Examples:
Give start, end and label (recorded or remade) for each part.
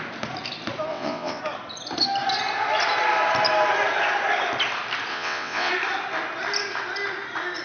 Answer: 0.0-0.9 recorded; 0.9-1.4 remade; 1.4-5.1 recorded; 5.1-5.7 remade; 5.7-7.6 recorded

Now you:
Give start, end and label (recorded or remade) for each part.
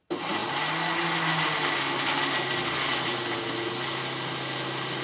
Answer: 0.0-5.0 recorded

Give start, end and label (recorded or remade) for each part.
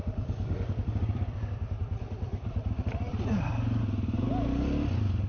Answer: 0.0-2.7 remade; 2.7-3.1 recorded; 3.1-3.8 remade; 3.8-5.3 recorded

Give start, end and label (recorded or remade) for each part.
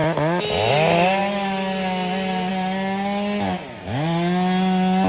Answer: 0.0-5.1 recorded